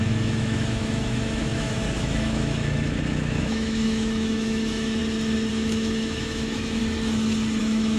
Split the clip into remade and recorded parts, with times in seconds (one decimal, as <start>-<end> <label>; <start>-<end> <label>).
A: 0.0-5.0 remade; 5.0-5.5 recorded; 5.5-6.8 remade; 6.8-7.6 recorded; 7.6-8.0 remade